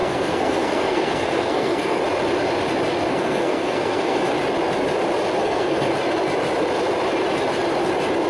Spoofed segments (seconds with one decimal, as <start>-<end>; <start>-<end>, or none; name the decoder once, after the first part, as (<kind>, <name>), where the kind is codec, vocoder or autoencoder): 0.0-2.0 (codec, SNAC); 3.1-4.3; 5.4-5.9